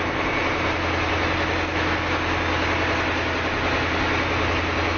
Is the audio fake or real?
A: real